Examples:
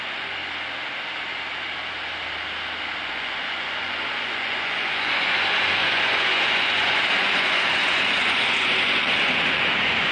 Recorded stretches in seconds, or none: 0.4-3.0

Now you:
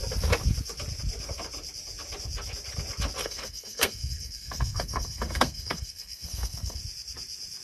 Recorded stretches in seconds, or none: 0.0-3.2; 6.8-7.6

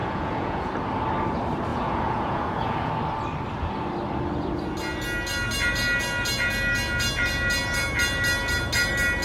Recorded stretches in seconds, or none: 0.7-1.7; 2.9-9.2

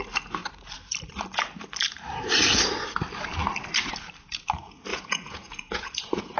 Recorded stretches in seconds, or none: 0.0-4.9